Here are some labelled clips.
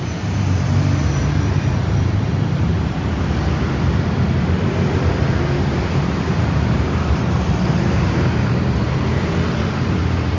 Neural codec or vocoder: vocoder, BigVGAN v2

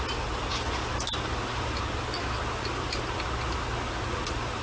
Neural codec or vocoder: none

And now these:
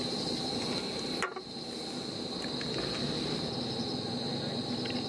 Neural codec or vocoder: none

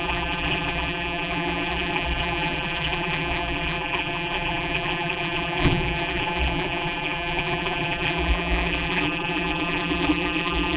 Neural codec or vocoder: vocoder, BigVGAN v2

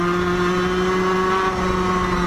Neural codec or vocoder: none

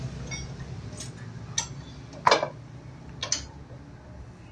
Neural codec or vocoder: none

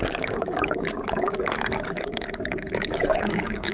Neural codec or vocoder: codec, DAC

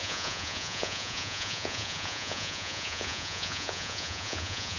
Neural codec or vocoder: vocoder, Vocos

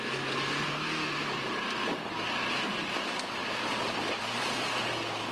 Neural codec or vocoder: none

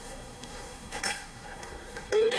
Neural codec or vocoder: codec, SNAC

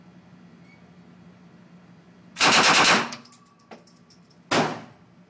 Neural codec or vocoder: none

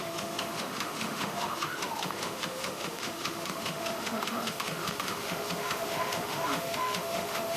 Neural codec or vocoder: autoencoder, DAC-VAE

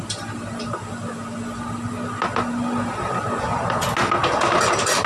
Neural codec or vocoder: none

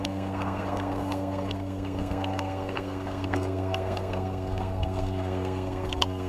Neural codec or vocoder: codec, SNAC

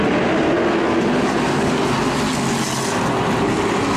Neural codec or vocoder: none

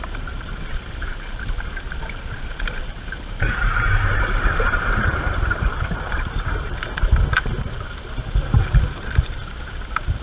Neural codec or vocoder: vocoder, BigVGAN v2